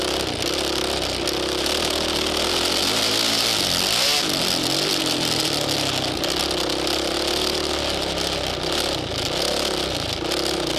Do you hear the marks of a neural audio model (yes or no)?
no